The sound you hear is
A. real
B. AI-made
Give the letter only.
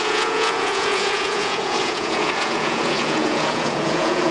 B